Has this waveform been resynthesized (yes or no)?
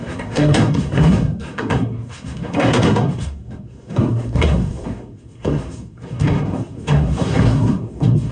yes